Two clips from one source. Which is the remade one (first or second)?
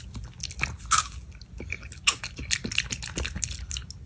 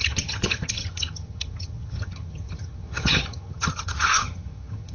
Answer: second